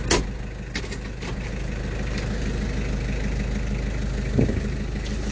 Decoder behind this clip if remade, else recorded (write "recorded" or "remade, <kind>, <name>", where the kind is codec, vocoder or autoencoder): recorded